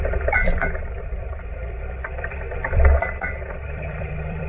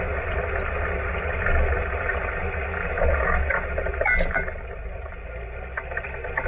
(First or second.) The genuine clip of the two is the second